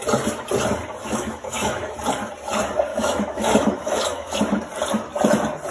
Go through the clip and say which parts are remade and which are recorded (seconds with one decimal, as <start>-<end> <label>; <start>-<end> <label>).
0.0-1.0 recorded; 1.0-1.9 remade; 1.9-2.9 recorded; 2.9-4.4 remade; 4.4-5.7 recorded